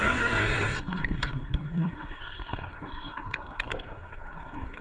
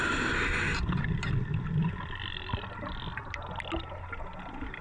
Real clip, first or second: second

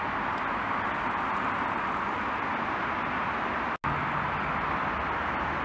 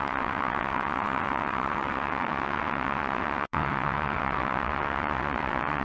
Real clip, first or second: first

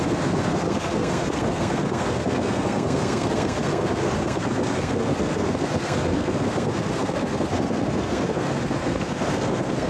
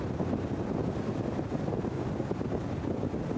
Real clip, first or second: second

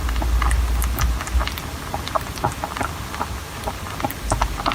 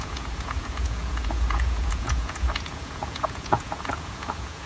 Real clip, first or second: first